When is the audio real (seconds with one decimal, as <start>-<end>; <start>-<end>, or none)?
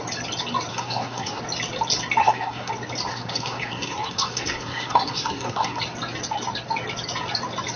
0.0-0.7; 1.4-2.2; 2.7-3.1; 5.8-7.8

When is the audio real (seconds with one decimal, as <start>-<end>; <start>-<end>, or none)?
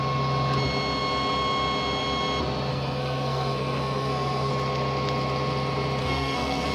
0.0-2.7; 4.5-6.0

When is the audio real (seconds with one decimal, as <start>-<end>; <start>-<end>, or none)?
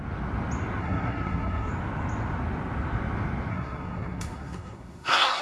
0.0-0.8; 1.7-3.5